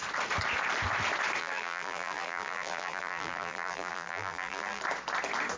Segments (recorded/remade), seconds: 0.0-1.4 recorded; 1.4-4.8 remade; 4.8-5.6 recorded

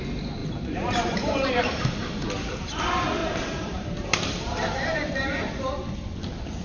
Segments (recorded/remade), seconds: 0.0-0.4 recorded; 0.4-1.5 remade; 1.5-2.0 recorded; 2.0-2.7 remade; 2.7-3.2 recorded; 3.2-5.1 remade; 5.1-6.6 recorded

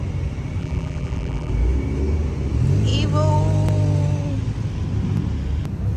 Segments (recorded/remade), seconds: 0.0-0.6 recorded; 0.6-1.5 remade; 1.5-6.0 recorded

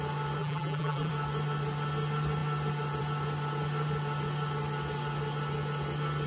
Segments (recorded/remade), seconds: 0.0-0.4 recorded; 0.4-1.1 remade; 1.1-6.3 recorded